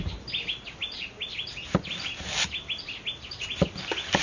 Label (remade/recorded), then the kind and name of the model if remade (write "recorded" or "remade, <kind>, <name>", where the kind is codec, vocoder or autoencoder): recorded